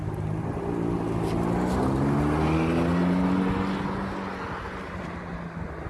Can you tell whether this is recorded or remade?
recorded